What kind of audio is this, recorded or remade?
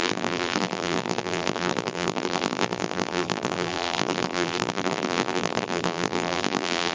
remade